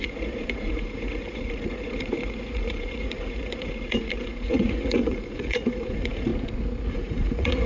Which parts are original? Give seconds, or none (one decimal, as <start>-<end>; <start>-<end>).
6.3-6.9